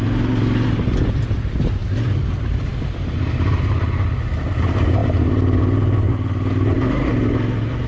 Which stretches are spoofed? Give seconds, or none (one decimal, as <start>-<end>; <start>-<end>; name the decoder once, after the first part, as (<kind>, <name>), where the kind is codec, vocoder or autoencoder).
1.8-3.0 (vocoder, BigVGAN v2); 5.0-5.6